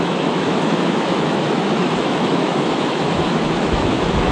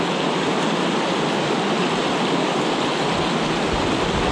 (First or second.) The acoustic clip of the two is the second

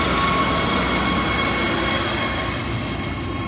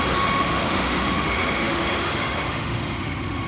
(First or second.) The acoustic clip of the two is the first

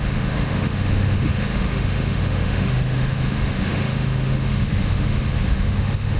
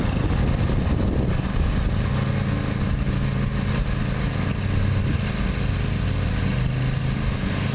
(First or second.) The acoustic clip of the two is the second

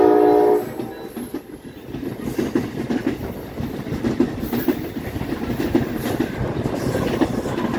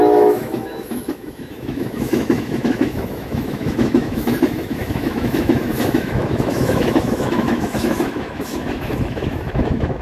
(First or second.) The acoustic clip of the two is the first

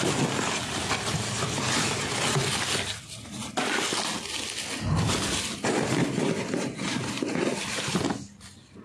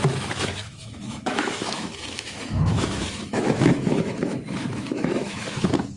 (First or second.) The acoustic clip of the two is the first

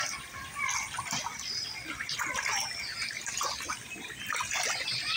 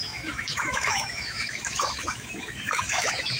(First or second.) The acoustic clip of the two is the first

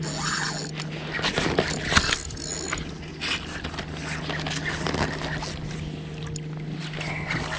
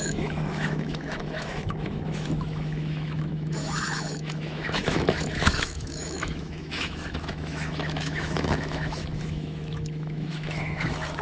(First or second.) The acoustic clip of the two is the first